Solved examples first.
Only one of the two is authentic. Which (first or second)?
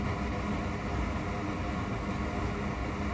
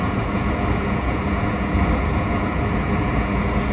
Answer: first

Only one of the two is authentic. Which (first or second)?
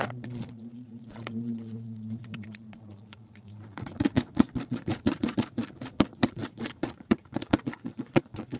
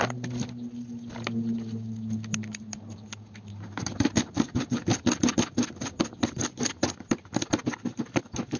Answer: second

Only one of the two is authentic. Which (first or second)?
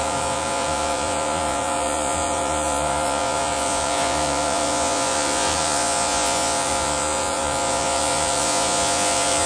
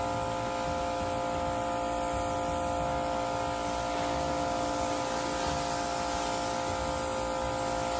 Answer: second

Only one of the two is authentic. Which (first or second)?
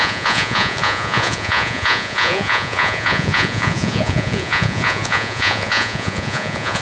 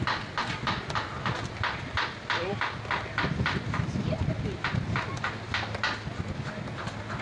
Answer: second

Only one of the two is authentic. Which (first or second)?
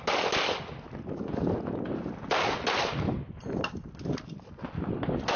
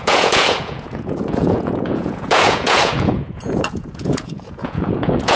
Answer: first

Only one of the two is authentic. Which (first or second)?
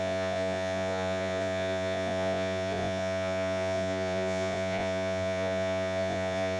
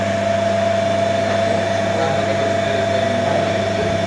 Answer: second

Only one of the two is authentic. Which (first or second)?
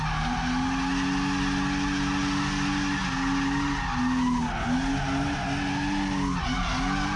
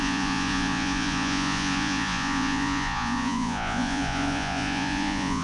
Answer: first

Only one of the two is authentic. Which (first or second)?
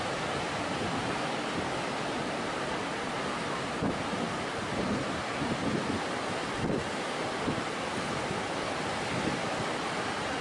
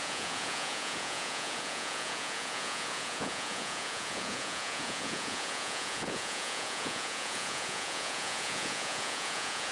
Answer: first